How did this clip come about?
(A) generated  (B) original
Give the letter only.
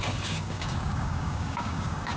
A